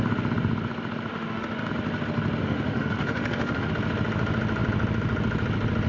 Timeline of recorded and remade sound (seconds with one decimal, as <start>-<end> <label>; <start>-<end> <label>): 0.0-1.1 recorded; 1.1-1.7 remade; 1.7-2.4 recorded; 2.4-3.7 remade; 3.7-5.9 recorded